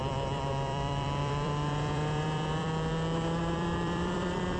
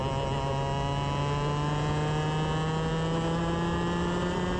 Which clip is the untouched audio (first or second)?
second